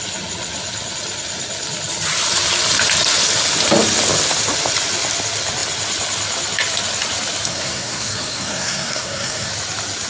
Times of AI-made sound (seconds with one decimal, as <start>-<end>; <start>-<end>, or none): 7.5-9.5